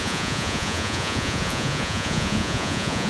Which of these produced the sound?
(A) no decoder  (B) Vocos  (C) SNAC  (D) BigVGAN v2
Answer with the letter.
B